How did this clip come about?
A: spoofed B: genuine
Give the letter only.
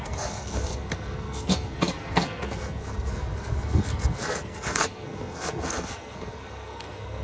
A